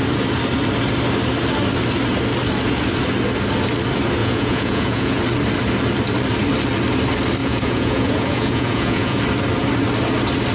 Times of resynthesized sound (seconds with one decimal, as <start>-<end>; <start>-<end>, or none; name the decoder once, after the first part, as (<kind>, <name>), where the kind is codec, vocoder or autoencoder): 4.2-5.2 (vocoder, Vocos); 7.4-9.2